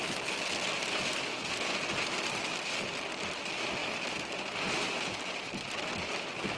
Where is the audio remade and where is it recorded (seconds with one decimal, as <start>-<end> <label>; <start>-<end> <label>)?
0.0-6.6 recorded